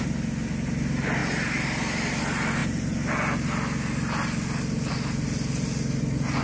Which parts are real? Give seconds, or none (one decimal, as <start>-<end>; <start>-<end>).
0.0-6.4